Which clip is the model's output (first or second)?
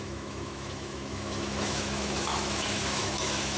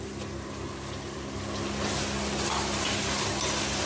first